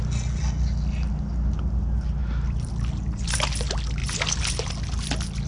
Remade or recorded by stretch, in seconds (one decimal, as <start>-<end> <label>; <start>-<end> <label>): 0.0-2.2 recorded; 2.2-2.7 remade; 2.7-4.0 recorded; 4.0-4.7 remade; 4.7-5.5 recorded